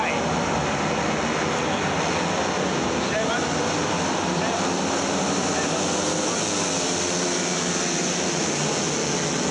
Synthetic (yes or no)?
no